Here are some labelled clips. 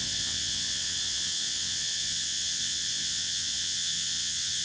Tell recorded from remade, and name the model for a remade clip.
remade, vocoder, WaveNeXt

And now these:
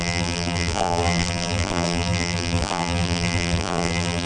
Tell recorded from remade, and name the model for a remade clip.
remade, vocoder, BigVGAN v2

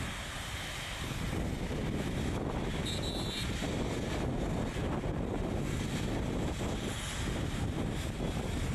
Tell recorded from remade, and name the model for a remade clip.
recorded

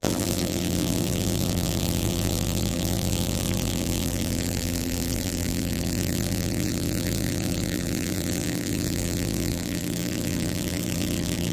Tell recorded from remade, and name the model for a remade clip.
remade, vocoder, BigVGAN v2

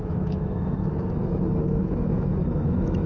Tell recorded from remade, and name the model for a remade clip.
remade, autoencoder, DAC-VAE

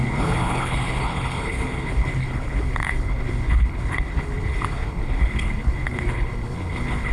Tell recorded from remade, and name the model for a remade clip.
remade, codec, HILCodec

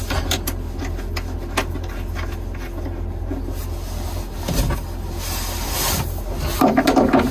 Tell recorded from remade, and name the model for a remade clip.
recorded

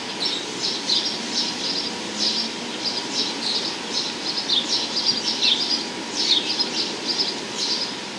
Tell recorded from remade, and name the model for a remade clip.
recorded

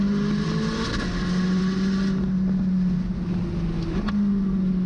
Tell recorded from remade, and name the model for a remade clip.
recorded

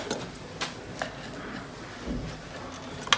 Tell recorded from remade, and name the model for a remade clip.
recorded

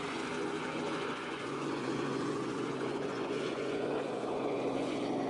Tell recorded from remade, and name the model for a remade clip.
remade, vocoder, Vocos